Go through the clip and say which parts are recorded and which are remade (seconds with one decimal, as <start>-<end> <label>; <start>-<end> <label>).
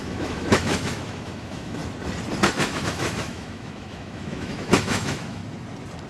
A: 0.0-1.8 remade; 1.8-2.6 recorded; 2.6-5.4 remade; 5.4-6.1 recorded